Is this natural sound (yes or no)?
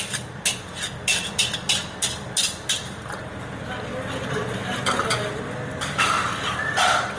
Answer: yes